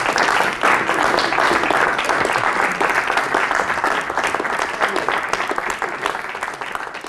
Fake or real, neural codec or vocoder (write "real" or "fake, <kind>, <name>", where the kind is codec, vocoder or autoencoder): real